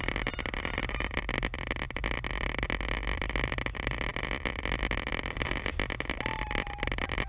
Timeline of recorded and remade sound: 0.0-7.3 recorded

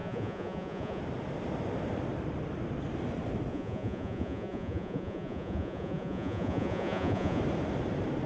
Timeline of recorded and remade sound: 0.0-1.0 remade; 1.0-3.5 recorded; 3.5-7.4 remade; 7.4-8.3 recorded

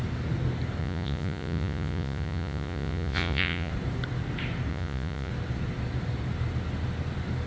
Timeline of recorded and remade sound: 0.0-0.8 recorded; 0.8-3.7 remade; 3.7-4.7 recorded; 4.7-5.3 remade; 5.3-7.5 recorded